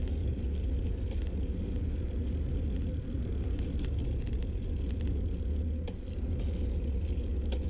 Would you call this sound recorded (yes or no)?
yes